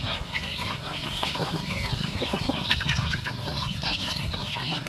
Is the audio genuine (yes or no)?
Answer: no